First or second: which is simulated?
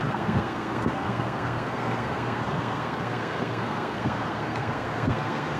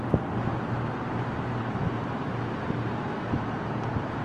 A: first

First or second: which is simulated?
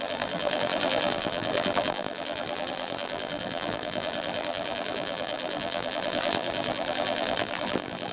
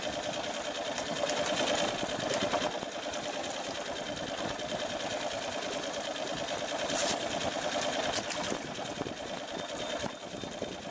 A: first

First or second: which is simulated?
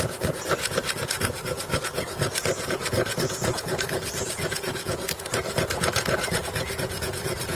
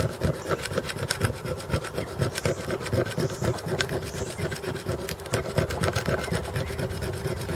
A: first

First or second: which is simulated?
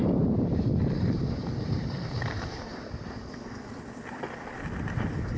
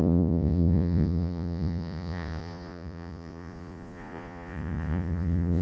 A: second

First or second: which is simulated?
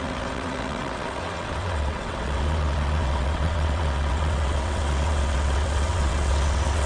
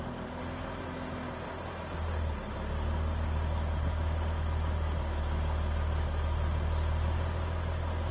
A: first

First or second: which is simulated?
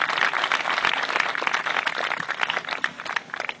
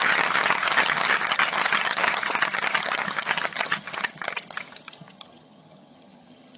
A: second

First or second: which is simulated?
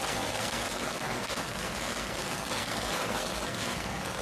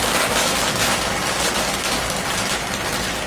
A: first